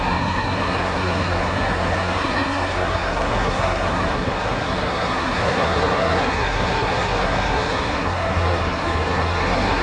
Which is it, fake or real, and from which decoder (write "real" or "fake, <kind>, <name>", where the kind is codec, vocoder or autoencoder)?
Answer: fake, codec, SNAC